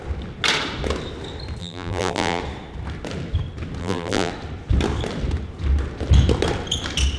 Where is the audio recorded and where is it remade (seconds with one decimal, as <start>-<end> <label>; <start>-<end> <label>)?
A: 0.0-1.6 recorded; 1.6-2.4 remade; 2.4-3.8 recorded; 3.8-4.3 remade; 4.3-7.2 recorded